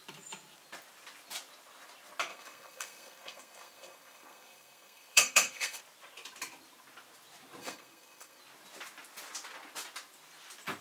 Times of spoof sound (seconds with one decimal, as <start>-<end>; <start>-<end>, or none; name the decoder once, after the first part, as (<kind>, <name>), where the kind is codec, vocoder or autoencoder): 2.3-5.8 (codec, SNAC); 7.6-8.4